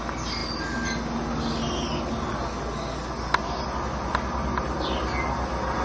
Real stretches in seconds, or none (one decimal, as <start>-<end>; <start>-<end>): 0.0-5.8